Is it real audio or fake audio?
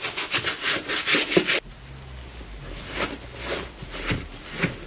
real